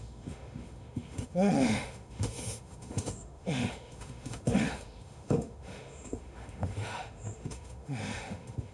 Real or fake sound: fake